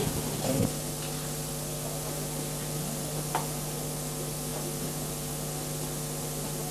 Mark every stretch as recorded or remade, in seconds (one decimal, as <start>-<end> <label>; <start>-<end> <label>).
0.0-6.7 recorded